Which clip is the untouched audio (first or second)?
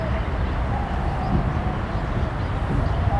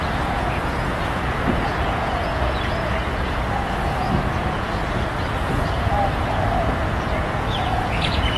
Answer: first